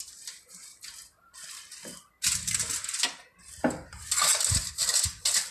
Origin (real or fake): real